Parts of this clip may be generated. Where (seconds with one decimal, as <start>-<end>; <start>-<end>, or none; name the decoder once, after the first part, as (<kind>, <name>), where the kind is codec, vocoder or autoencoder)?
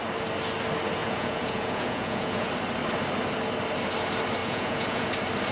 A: 1.0-2.5 (vocoder, Vocos); 4.4-5.1